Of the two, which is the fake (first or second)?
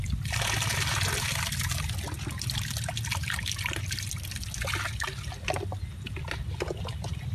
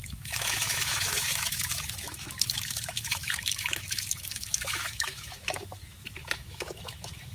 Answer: second